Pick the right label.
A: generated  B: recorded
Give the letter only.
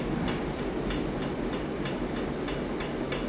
B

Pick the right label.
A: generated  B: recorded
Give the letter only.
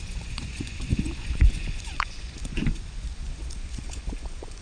A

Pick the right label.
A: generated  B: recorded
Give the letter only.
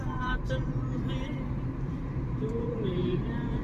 A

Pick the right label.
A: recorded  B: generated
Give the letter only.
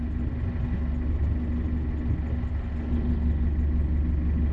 A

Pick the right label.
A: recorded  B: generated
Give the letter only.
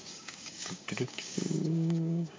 B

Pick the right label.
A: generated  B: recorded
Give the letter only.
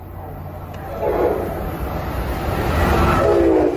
B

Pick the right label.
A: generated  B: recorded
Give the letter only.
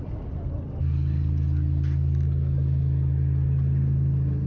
B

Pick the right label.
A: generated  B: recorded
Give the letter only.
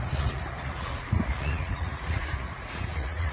A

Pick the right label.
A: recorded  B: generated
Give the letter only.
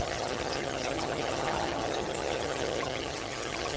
B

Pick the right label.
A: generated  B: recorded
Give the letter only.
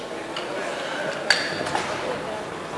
B